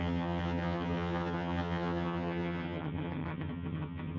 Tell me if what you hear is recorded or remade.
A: remade